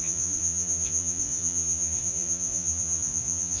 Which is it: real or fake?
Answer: fake